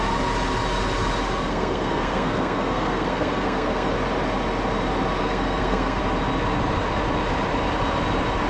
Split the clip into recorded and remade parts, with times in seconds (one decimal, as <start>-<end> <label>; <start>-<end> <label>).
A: 0.0-1.4 recorded; 1.4-3.9 remade; 3.9-5.2 recorded; 5.2-6.0 remade; 6.0-8.5 recorded